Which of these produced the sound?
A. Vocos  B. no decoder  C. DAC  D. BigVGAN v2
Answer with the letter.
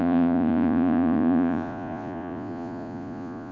A